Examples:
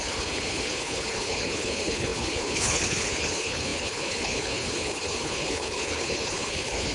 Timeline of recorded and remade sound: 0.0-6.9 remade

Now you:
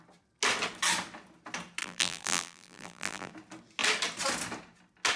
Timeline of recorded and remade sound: 0.0-1.8 recorded; 1.8-3.3 remade; 3.3-5.2 recorded

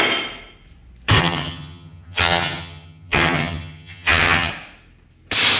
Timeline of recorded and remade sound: 0.0-1.2 recorded; 1.2-4.5 remade; 4.5-5.6 recorded

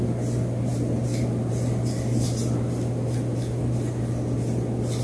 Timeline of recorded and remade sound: 0.0-5.0 recorded

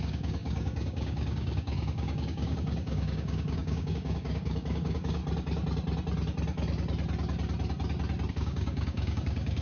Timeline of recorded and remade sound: 0.0-5.2 remade; 5.2-8.3 recorded; 8.3-9.6 remade

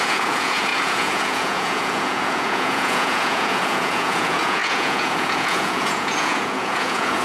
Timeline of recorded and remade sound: 0.0-7.2 remade